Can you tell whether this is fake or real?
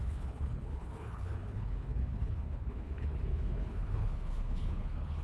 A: fake